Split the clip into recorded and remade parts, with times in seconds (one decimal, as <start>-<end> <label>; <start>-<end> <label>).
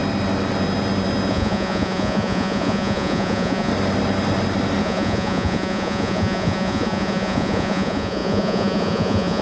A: 0.0-1.3 recorded; 1.3-3.7 remade; 3.7-4.8 recorded; 4.8-9.4 remade